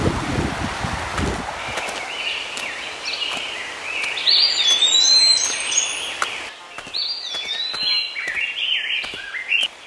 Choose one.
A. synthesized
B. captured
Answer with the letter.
B